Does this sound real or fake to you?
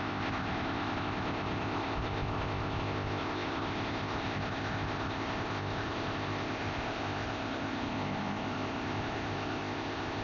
fake